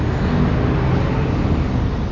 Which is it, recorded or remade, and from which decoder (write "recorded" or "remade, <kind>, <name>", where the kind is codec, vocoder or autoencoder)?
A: recorded